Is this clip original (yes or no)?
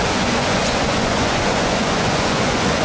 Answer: no